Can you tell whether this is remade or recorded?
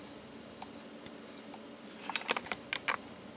recorded